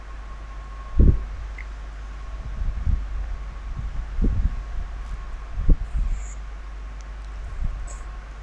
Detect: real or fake real